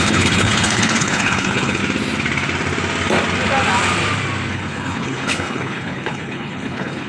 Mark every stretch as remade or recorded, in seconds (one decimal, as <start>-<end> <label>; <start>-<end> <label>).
0.0-1.8 remade; 1.8-4.5 recorded; 4.5-7.1 remade